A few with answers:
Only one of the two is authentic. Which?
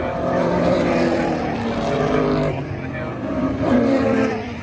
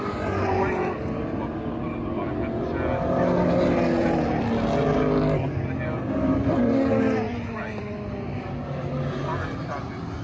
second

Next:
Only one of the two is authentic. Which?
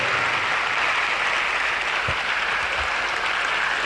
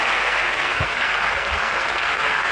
first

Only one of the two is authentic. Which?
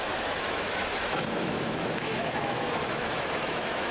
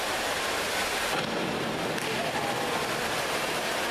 second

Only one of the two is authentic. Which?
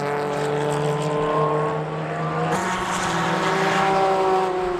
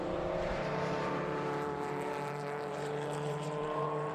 first